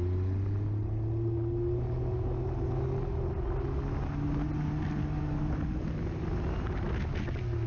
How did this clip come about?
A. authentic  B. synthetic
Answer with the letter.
A